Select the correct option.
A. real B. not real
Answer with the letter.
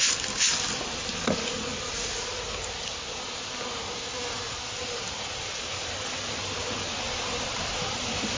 A